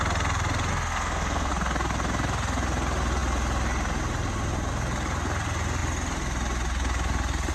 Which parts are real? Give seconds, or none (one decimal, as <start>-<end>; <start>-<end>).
0.0-0.7; 1.5-7.5